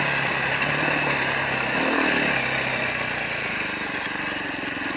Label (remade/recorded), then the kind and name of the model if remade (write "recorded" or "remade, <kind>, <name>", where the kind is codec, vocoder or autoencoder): recorded